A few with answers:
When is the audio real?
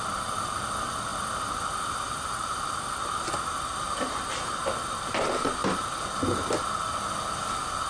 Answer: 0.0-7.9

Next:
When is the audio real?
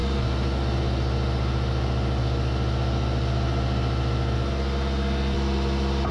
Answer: 0.0-6.1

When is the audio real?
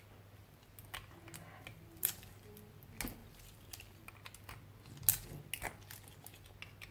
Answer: 0.0-1.7; 2.4-3.2; 4.1-6.9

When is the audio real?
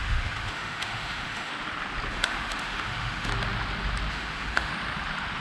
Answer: 1.5-2.1; 3.3-4.1; 4.7-5.4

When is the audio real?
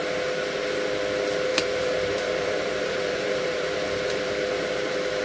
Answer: 0.0-1.5; 4.1-5.2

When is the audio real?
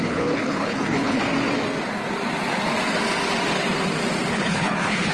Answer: 1.2-4.3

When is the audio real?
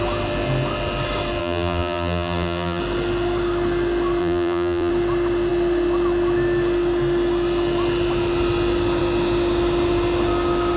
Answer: 0.0-1.4; 2.8-4.2; 4.9-10.8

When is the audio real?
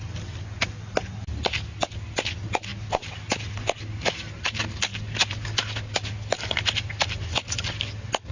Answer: 0.0-8.3